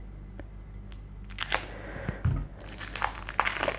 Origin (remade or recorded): recorded